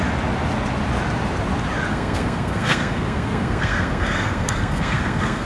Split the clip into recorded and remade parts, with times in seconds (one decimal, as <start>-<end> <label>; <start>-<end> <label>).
0.0-1.9 recorded; 1.9-5.5 remade